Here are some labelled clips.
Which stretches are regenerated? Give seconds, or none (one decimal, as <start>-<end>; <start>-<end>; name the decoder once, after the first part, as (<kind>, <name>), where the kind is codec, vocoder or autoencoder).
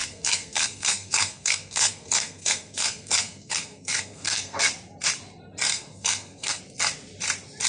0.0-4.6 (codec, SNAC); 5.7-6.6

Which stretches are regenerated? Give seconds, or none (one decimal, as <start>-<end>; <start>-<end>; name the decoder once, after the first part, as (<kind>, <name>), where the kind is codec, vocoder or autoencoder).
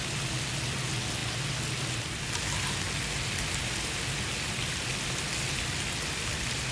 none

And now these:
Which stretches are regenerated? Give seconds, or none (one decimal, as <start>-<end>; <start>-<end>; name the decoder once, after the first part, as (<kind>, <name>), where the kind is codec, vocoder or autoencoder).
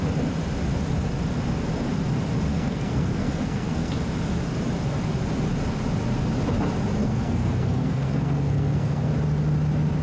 2.5-3.9 (codec, SNAC); 7.0-9.1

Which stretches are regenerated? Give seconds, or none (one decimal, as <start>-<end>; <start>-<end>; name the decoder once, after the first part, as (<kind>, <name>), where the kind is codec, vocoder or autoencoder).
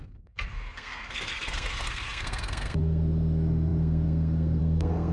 0.0-5.1 (codec, SNAC)